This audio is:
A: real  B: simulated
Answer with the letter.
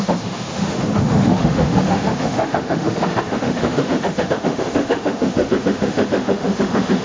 B